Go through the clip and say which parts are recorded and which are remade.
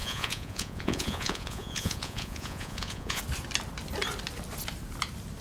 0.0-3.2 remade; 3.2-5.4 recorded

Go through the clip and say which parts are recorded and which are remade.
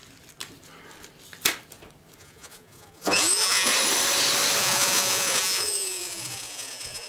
0.0-2.2 recorded; 2.2-3.7 remade; 3.7-4.6 recorded; 4.6-7.1 remade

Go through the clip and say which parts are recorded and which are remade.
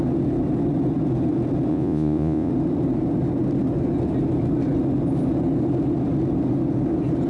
0.0-1.7 recorded; 1.7-2.5 remade; 2.5-7.3 recorded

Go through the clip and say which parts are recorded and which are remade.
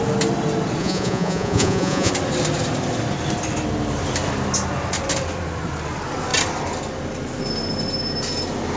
0.0-0.8 recorded; 0.8-2.1 remade; 2.1-8.8 recorded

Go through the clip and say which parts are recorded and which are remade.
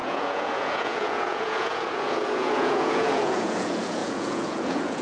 0.0-5.0 remade